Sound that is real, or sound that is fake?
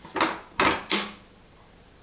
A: real